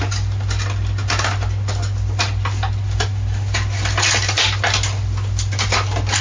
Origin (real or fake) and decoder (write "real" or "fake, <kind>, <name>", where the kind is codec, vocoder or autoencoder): real